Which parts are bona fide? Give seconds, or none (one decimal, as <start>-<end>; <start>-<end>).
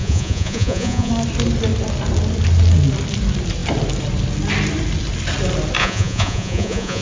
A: 1.1-5.8